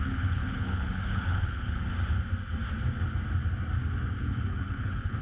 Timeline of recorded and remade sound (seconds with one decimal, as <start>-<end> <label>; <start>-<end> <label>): 0.0-1.9 remade; 1.9-4.2 recorded; 4.2-5.2 remade